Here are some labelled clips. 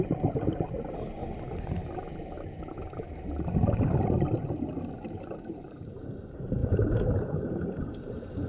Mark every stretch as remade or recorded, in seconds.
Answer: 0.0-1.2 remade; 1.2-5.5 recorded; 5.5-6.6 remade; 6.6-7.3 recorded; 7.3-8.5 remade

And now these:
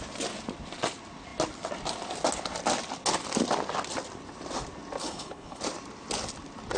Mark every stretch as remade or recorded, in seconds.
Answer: 0.0-5.0 recorded; 5.0-5.6 remade; 5.6-6.8 recorded

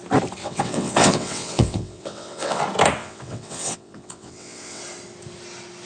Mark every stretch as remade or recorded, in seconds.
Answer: 0.0-0.4 recorded; 0.4-2.6 remade; 2.6-3.0 recorded; 3.0-4.8 remade; 4.8-5.9 recorded

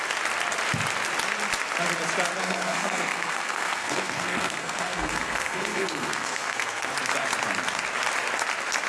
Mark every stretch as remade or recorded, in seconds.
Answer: 0.0-2.4 recorded; 2.4-6.9 remade; 6.9-8.9 recorded

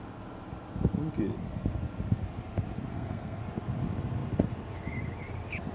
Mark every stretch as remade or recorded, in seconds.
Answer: 0.0-2.9 recorded; 2.9-3.4 remade; 3.4-5.7 recorded

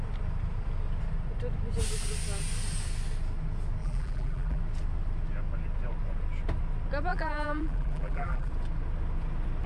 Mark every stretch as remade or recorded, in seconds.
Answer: 0.0-3.8 recorded; 3.8-4.6 remade; 4.6-7.1 recorded; 7.1-8.5 remade; 8.5-9.7 recorded